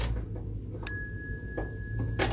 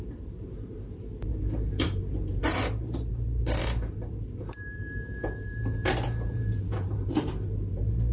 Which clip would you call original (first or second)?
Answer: first